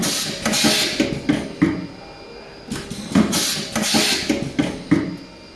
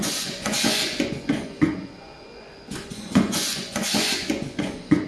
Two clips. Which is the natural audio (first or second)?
first